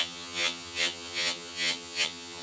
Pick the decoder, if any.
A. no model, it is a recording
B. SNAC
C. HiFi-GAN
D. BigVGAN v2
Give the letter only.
C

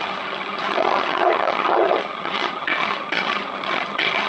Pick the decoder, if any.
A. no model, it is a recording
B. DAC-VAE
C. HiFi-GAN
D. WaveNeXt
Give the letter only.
C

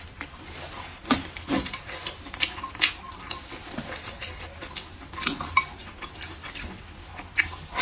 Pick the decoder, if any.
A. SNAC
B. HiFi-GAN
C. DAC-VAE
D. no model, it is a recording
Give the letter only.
D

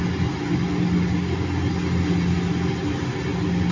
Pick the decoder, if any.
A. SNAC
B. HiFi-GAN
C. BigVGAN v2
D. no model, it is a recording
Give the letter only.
D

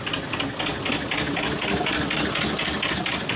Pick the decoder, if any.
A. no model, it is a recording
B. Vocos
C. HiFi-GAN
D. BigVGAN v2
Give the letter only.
A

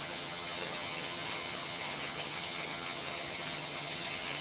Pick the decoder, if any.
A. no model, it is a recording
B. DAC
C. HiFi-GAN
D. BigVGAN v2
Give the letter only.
C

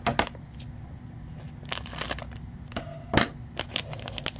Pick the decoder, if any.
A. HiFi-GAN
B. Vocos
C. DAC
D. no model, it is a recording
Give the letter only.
D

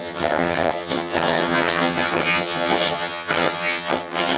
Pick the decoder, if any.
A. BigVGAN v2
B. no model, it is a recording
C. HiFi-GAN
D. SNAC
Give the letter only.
C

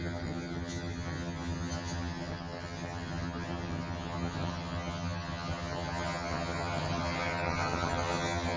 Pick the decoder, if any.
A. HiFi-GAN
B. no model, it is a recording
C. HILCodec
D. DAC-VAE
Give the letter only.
A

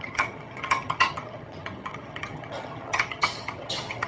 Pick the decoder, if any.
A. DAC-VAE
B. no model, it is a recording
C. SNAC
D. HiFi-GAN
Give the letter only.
D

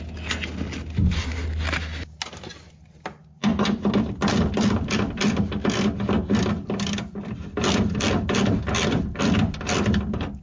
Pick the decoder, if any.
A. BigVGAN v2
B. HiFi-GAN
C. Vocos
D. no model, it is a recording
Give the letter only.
D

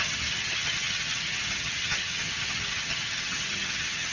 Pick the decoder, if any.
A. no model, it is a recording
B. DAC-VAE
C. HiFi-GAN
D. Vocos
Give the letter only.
C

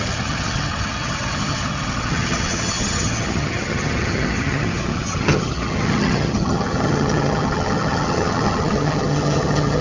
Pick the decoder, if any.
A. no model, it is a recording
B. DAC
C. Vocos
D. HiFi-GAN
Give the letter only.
D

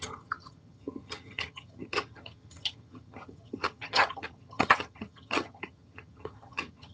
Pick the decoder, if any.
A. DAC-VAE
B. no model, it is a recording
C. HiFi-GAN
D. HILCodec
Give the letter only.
C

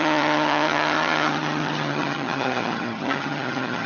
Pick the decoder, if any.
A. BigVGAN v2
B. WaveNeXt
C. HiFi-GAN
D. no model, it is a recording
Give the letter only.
C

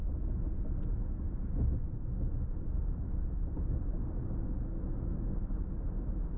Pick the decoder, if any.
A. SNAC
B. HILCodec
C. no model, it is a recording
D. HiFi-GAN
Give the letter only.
C